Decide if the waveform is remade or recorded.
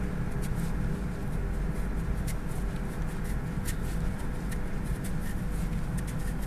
recorded